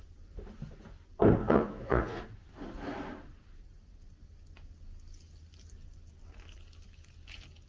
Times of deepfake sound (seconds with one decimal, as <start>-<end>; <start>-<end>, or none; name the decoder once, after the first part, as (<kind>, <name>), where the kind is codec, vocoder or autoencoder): 1.4-2.2 (vocoder, Vocos)

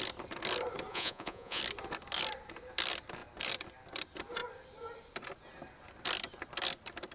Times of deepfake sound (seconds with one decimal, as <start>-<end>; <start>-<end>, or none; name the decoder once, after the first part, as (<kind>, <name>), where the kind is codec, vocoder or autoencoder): 0.9-1.6 (vocoder, Vocos)

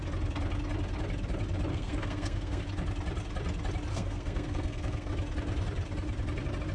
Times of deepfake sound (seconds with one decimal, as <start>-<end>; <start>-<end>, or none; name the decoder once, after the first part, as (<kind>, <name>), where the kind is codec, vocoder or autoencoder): 1.7-2.6 (codec, SNAC); 3.9-5.1

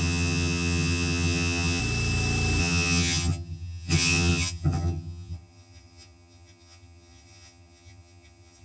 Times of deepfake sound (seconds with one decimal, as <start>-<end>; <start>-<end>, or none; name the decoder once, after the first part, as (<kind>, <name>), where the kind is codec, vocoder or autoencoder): 0.0-1.8 (vocoder, HiFi-GAN); 2.6-8.6

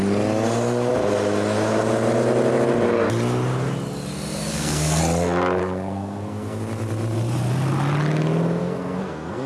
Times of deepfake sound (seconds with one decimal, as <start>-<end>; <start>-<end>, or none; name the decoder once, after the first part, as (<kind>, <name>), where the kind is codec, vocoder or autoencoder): 4.5-5.0 (codec, SNAC); 5.6-6.6; 8.6-9.5

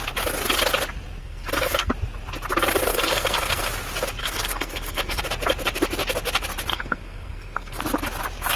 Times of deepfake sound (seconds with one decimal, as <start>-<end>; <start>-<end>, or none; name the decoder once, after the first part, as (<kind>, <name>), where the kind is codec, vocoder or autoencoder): 1.2-1.9 (codec, SNAC); 2.9-3.7; 4.2-5.2; 6.7-7.8